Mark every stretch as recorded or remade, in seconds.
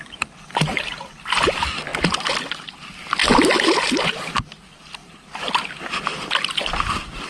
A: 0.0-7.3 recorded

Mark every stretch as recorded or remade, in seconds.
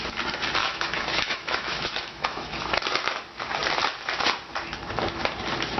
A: 0.0-0.6 recorded; 0.6-2.5 remade; 2.5-5.8 recorded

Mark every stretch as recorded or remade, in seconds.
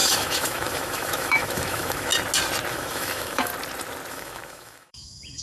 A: 0.0-2.1 remade; 2.1-2.7 recorded; 2.7-3.5 remade; 3.5-4.1 recorded; 4.1-5.4 remade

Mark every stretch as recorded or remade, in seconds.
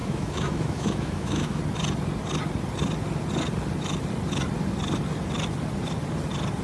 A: 0.0-1.6 remade; 1.6-6.6 recorded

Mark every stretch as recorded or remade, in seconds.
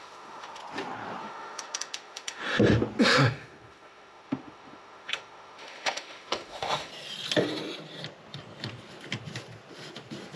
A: 0.0-0.6 remade; 0.6-1.2 recorded; 1.2-2.4 remade; 2.4-3.0 recorded; 3.0-6.9 remade; 6.9-10.4 recorded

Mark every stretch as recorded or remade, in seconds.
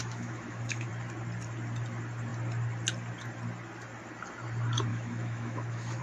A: 0.0-0.9 remade; 0.9-4.9 recorded; 4.9-6.0 remade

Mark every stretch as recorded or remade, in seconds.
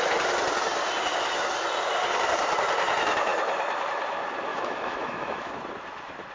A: 0.0-4.5 recorded; 4.5-5.5 remade; 5.5-6.3 recorded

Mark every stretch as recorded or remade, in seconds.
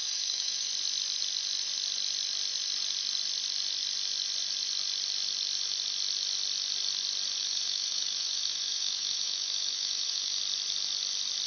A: 0.0-0.7 remade; 0.7-7.4 recorded; 7.4-10.4 remade; 10.4-11.5 recorded